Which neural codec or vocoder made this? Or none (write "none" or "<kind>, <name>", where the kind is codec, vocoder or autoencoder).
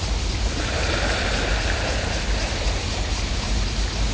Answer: none